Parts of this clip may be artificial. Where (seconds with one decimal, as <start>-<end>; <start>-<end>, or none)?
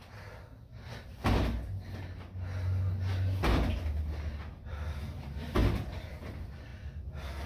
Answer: 0.0-0.7; 4.5-6.7